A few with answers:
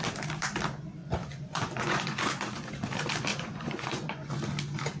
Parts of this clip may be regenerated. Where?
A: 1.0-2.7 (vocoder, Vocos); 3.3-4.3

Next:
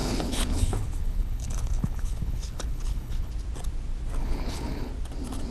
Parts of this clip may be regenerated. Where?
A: 0.0-3.3 (codec, HILCodec); 4.2-4.9